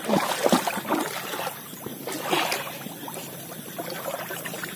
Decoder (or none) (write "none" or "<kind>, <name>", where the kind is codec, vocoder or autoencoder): none